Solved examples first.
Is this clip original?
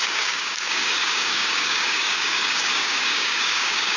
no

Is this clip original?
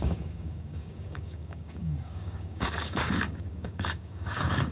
no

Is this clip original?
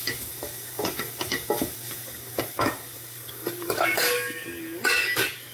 no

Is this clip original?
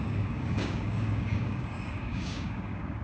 no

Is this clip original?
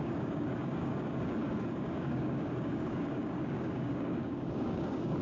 no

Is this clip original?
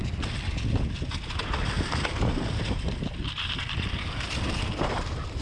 yes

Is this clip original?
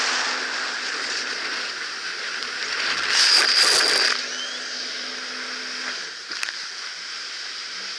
yes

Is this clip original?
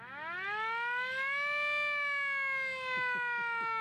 yes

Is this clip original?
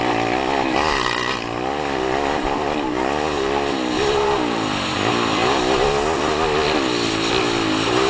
yes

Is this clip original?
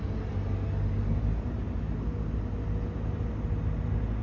yes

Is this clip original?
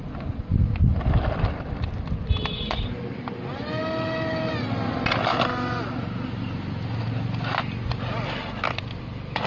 yes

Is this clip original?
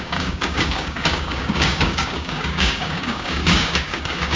no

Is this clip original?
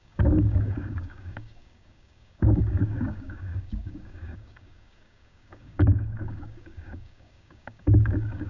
no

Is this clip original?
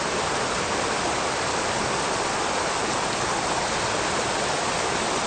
yes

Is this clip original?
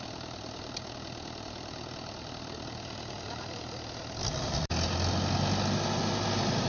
yes